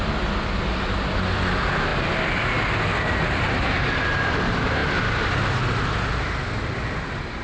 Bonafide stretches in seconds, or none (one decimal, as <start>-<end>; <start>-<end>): 0.0-7.4